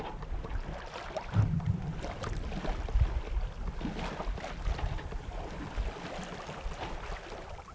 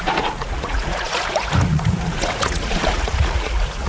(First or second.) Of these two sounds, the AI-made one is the second